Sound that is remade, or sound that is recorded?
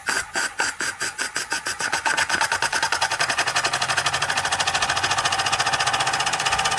remade